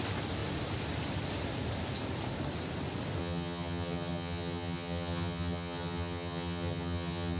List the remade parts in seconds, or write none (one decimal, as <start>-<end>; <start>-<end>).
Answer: 3.2-7.4